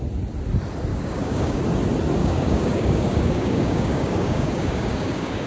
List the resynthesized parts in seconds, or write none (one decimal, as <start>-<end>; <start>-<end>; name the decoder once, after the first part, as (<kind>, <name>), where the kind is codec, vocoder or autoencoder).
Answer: 0.9-1.6 (codec, DAC); 2.2-5.5